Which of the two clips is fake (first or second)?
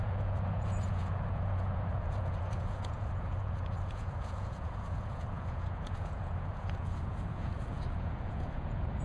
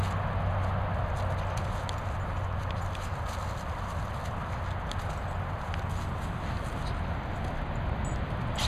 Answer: first